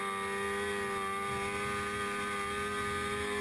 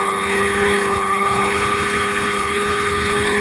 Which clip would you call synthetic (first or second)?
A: second